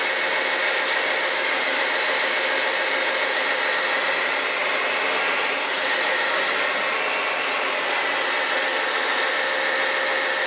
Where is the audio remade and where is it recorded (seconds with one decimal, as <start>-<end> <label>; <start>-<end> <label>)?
0.0-0.6 recorded; 0.6-1.8 remade; 1.8-10.5 recorded

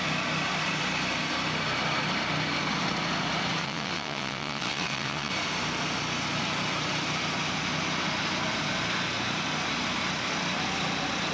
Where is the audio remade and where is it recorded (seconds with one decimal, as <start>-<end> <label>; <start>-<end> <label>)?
0.0-3.6 recorded; 3.6-5.3 remade; 5.3-11.3 recorded